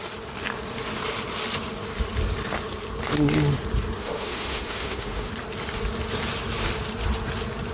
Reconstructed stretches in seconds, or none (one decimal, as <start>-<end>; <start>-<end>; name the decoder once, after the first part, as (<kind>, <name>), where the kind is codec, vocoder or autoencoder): 4.0-5.3 (autoencoder, DAC-VAE)